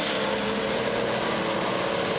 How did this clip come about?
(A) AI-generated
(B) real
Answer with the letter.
B